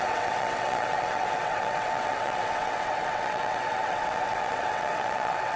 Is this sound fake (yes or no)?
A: yes